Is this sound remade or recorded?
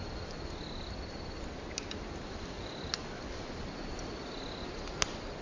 recorded